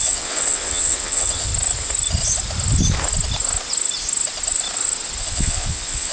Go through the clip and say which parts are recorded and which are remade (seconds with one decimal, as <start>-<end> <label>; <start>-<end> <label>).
0.0-1.5 remade; 1.5-5.2 recorded; 5.2-6.1 remade